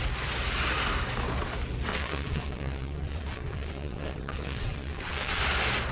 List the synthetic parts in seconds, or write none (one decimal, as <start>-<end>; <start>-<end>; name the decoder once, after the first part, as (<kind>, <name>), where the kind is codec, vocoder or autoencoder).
1.9-5.4 (vocoder, WaveNeXt)